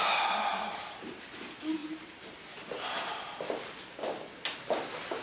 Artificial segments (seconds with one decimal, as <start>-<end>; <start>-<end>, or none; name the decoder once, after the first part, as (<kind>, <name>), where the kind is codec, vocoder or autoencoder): 0.5-1.3 (vocoder, BigVGAN v2); 1.8-2.4